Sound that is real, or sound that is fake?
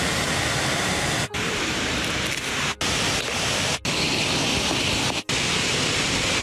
real